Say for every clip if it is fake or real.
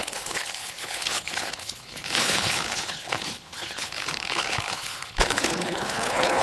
fake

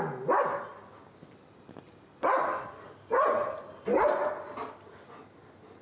real